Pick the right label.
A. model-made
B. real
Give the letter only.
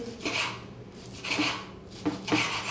B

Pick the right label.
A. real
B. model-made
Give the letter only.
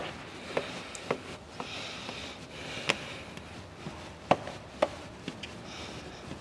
A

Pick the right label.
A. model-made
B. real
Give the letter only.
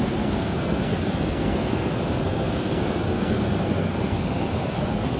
A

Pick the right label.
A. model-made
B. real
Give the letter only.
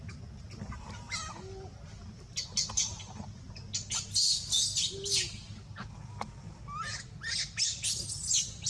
B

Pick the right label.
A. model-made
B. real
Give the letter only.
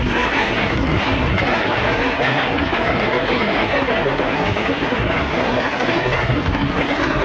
A